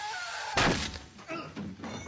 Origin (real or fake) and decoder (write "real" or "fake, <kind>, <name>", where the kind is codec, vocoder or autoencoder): real